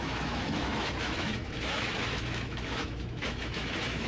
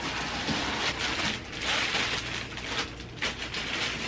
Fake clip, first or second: first